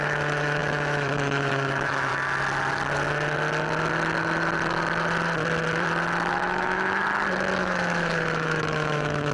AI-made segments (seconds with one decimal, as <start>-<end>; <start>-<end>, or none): 0.0-2.1; 6.3-7.0; 7.6-9.3